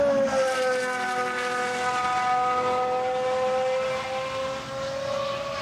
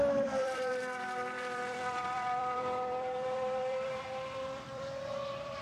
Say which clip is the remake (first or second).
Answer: second